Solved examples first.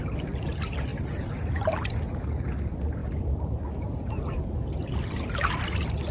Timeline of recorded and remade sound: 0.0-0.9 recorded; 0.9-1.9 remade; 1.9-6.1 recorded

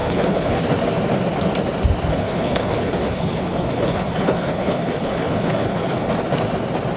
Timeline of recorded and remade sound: 0.0-0.6 remade; 0.6-2.1 recorded; 2.1-6.1 remade; 6.1-7.0 recorded

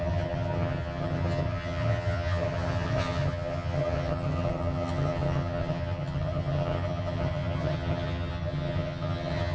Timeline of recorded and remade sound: 0.0-9.5 remade